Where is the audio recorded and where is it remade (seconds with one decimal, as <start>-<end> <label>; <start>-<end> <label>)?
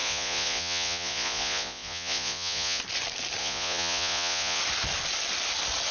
0.0-2.8 remade; 2.8-3.4 recorded; 3.4-4.6 remade; 4.6-5.9 recorded